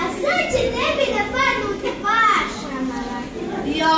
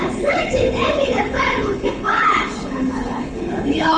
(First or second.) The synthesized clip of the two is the second